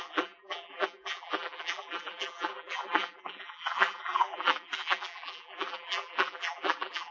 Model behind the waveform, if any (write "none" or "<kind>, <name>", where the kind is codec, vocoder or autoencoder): vocoder, BigVGAN v2